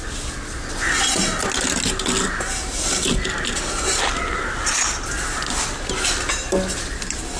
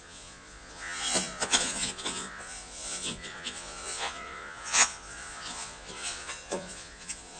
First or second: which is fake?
second